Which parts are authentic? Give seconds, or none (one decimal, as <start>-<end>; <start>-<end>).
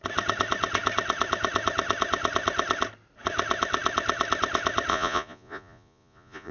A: 0.0-4.9